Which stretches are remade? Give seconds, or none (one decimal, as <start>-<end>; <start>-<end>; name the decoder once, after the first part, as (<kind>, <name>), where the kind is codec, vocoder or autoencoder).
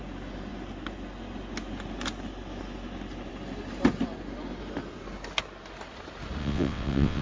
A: 6.4-7.2 (vocoder, WaveNeXt)